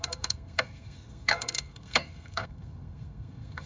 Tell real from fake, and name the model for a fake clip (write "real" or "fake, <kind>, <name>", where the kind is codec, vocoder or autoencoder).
fake, codec, SNAC